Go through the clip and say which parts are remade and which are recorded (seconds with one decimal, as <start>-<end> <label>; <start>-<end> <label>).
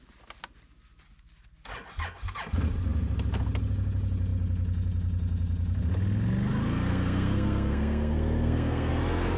0.0-6.9 recorded; 6.9-8.9 remade; 8.9-9.4 recorded